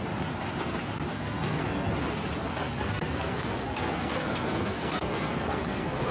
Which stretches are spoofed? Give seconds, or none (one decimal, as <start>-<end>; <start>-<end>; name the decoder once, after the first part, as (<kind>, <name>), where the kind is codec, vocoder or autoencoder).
1.1-1.9 (codec, SNAC); 2.4-6.1